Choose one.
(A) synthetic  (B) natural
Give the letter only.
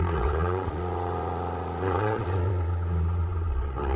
A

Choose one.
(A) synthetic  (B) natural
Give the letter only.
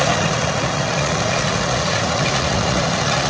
A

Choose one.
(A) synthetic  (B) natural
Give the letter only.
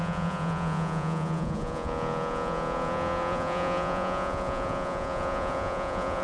A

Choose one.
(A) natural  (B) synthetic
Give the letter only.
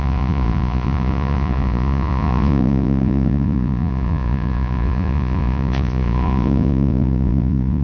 B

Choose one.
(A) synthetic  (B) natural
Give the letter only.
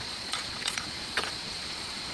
A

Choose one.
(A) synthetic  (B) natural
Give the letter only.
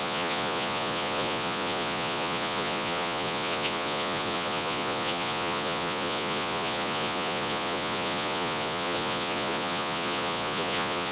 A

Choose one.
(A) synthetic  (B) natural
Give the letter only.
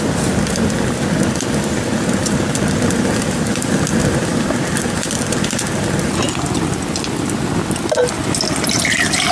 B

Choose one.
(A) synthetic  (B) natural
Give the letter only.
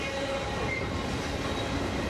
B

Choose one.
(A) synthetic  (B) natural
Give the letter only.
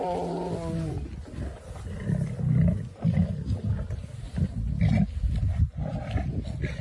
B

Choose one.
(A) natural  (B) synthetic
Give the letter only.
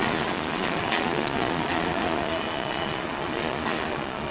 B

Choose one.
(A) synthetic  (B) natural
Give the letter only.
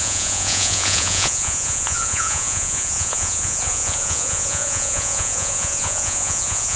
A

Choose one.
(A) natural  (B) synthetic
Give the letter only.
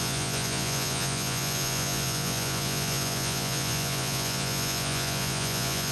B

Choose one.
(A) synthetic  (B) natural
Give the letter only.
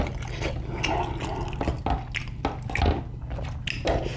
B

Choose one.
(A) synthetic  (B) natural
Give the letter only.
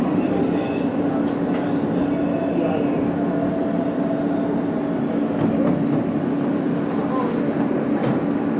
B